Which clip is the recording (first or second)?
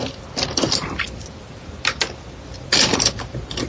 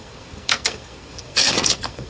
first